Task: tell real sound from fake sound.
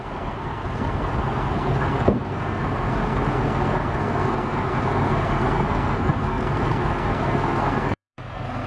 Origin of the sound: fake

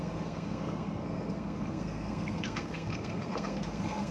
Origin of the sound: fake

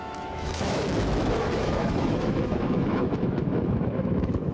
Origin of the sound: fake